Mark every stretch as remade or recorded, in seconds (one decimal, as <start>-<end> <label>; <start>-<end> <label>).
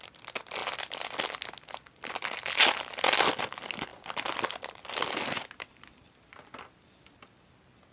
0.0-7.9 recorded